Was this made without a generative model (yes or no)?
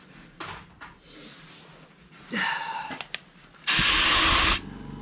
yes